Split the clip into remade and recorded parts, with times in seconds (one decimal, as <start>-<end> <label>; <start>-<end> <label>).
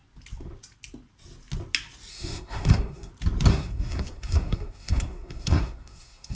0.0-2.1 recorded; 2.1-3.1 remade; 3.1-3.5 recorded; 3.5-6.4 remade